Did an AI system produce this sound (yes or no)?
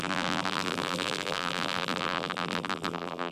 yes